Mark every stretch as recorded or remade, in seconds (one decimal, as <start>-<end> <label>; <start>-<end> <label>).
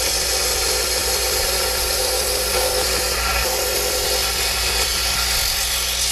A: 0.0-6.1 recorded